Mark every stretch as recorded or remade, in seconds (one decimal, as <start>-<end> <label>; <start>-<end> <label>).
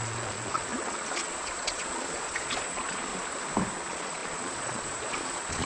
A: 0.0-3.1 remade; 3.1-3.8 recorded; 3.8-5.7 remade